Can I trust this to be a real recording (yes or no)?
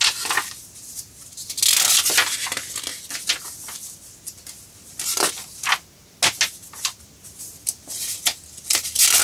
yes